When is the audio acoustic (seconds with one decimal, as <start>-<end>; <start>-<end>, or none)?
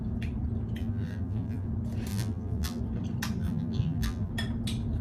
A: 0.0-0.8; 1.7-2.1; 2.8-3.4; 4.3-5.0